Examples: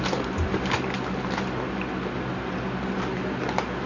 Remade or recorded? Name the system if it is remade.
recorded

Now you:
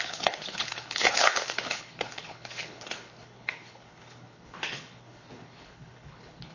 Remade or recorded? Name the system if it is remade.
remade, codec, HILCodec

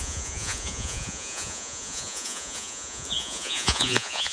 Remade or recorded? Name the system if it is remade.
remade, vocoder, Vocos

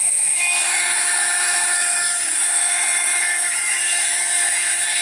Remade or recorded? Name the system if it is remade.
remade, autoencoder, DAC-VAE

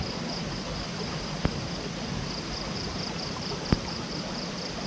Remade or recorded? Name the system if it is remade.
recorded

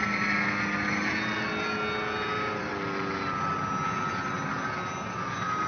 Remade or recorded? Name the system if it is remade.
recorded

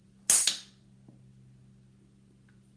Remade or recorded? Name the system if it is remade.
recorded